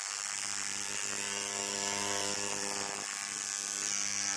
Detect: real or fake real